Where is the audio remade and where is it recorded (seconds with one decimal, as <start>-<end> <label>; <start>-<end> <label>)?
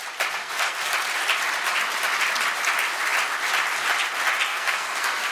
0.0-0.4 recorded; 0.4-0.9 remade; 0.9-4.5 recorded; 4.5-5.3 remade